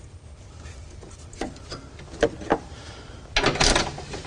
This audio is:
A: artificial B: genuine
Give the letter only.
B